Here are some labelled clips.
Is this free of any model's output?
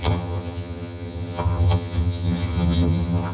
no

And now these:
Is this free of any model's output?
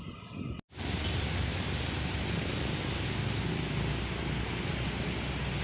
yes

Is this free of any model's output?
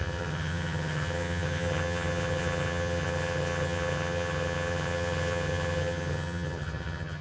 no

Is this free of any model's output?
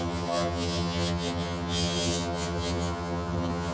no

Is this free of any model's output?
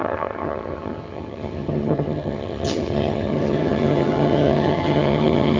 no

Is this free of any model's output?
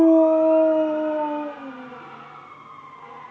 yes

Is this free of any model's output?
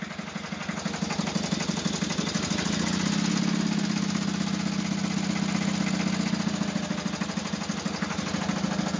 yes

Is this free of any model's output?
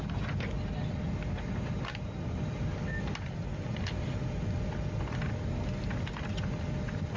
yes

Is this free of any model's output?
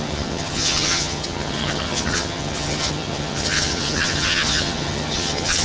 no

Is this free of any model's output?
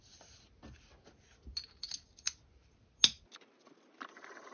yes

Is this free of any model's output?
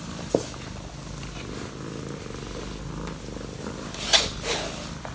yes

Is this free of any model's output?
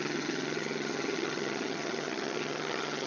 no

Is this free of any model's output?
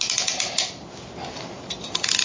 yes